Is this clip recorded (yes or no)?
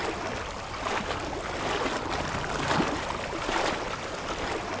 yes